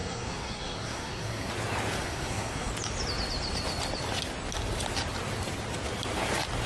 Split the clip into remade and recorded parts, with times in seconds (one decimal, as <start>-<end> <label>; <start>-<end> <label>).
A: 0.0-1.5 remade; 1.5-2.0 recorded; 2.0-2.7 remade; 2.7-6.7 recorded